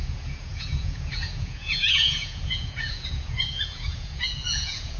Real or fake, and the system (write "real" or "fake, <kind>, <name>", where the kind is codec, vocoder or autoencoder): fake, vocoder, Vocos